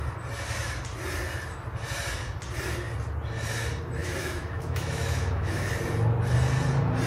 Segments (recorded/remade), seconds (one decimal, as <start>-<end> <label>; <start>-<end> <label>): 0.0-4.0 recorded; 4.0-5.7 remade; 5.7-7.1 recorded